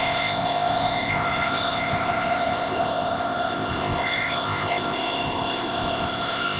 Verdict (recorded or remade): remade